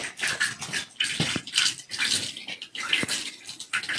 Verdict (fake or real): real